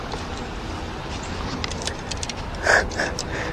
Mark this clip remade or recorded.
recorded